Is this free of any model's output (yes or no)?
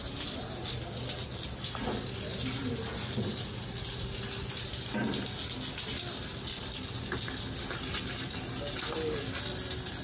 yes